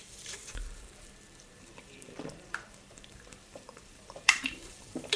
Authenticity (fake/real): fake